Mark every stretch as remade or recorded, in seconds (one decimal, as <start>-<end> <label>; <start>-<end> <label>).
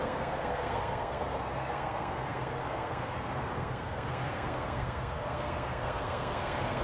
0.0-6.8 remade